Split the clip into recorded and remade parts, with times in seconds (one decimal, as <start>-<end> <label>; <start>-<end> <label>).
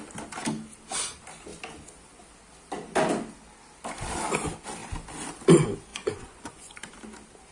0.0-5.9 recorded; 5.9-6.9 remade; 6.9-7.5 recorded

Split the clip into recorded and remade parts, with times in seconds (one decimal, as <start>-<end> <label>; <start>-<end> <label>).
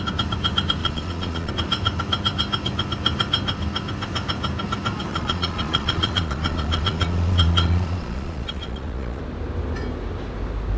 0.0-0.8 recorded; 0.8-1.5 remade; 1.5-5.1 recorded; 5.1-9.2 remade; 9.2-10.8 recorded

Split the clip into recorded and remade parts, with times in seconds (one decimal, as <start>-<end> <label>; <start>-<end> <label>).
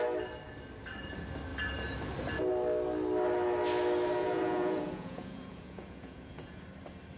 0.0-4.2 recorded; 4.2-6.6 remade; 6.6-7.2 recorded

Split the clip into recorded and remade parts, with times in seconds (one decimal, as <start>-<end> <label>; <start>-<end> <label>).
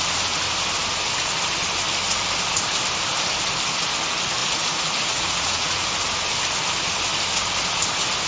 0.0-4.4 recorded; 4.4-5.9 remade; 5.9-8.3 recorded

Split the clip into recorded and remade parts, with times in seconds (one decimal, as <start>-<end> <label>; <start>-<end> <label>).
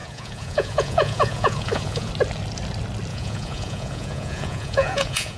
0.0-2.1 remade; 2.1-3.1 recorded; 3.1-5.4 remade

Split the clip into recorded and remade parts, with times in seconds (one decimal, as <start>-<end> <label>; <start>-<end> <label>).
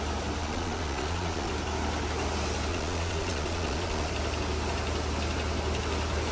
0.0-0.4 recorded; 0.4-1.5 remade; 1.5-2.7 recorded; 2.7-4.1 remade; 4.1-6.3 recorded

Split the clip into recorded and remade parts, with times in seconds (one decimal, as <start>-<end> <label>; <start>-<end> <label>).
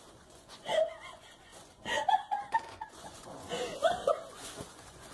0.0-5.1 remade